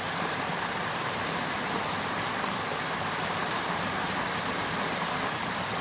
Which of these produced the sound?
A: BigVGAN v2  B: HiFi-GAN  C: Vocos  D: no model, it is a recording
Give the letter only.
D